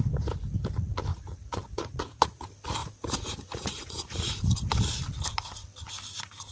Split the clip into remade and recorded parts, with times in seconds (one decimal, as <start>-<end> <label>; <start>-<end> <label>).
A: 0.0-1.1 recorded; 1.1-2.4 remade; 2.4-2.8 recorded; 2.8-4.4 remade; 4.4-6.5 recorded